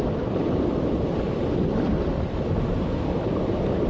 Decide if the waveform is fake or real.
real